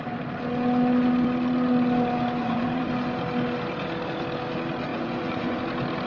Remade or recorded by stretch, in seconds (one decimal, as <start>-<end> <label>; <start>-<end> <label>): 0.0-2.4 recorded; 2.4-2.9 remade; 2.9-4.9 recorded; 4.9-5.6 remade; 5.6-6.1 recorded